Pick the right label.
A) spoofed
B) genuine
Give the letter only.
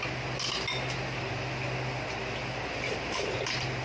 B